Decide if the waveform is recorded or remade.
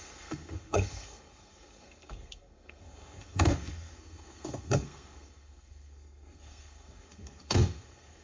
remade